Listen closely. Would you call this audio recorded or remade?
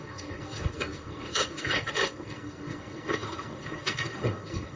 remade